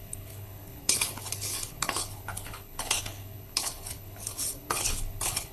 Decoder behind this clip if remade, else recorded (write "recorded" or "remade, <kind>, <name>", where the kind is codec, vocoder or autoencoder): remade, codec, HILCodec